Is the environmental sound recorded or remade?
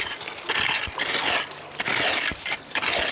recorded